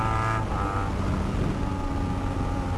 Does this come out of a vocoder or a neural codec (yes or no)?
no